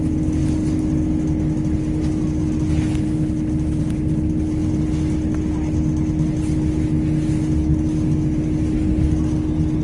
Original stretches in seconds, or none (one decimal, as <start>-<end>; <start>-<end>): 0.0-9.8

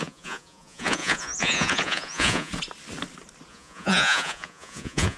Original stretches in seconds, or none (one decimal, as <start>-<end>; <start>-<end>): 2.5-3.5

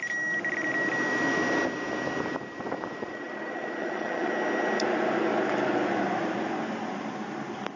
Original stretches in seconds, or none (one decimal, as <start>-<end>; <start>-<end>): 0.0-3.0; 4.3-7.8

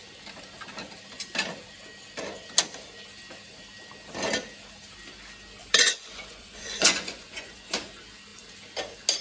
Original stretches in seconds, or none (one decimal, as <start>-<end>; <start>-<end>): 0.0-5.6; 7.9-9.2

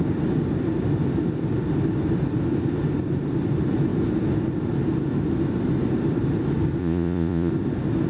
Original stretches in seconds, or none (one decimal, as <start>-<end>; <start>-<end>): 0.0-6.8; 7.5-8.1

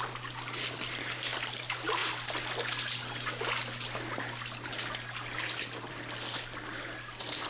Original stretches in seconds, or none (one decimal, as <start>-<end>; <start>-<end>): 0.0-7.5